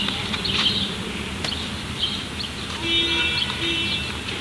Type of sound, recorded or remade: recorded